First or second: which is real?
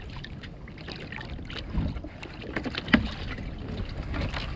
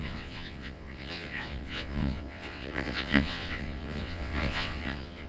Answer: first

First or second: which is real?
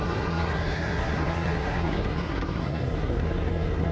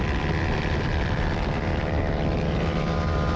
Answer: second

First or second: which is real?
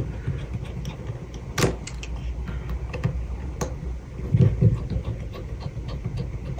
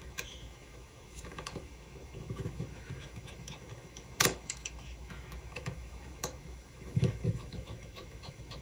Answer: first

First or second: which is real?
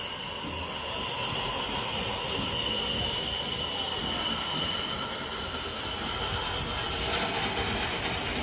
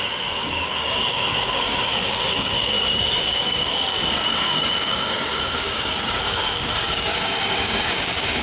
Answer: first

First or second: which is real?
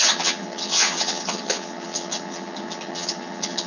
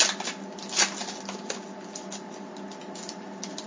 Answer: second